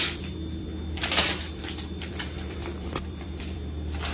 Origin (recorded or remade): remade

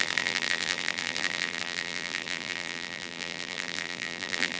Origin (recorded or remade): remade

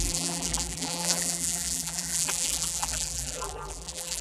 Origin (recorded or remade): remade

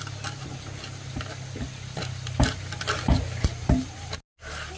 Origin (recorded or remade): recorded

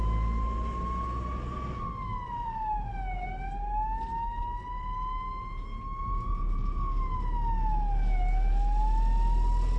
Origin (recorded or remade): recorded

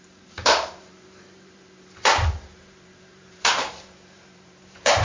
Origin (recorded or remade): remade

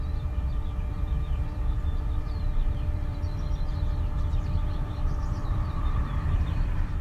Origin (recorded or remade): remade